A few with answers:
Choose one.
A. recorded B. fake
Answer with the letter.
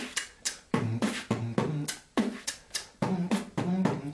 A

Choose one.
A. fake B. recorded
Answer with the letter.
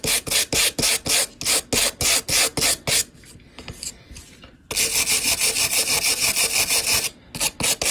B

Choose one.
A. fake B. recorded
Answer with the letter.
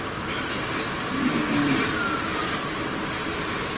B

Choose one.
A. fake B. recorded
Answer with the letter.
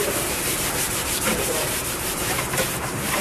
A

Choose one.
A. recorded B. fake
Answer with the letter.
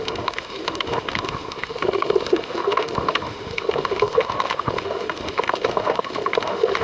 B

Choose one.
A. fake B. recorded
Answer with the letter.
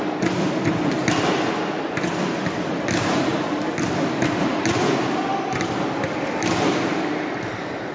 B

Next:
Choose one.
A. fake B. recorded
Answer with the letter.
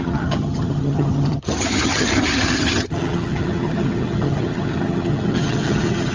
A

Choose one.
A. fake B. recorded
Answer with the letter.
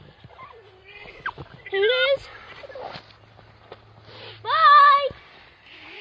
B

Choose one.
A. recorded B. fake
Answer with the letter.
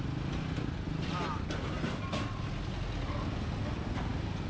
A